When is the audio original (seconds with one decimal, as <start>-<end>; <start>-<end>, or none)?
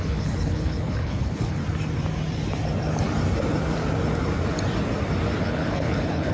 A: 1.6-5.4